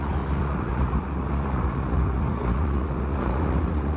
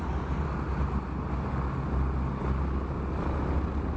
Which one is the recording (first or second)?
second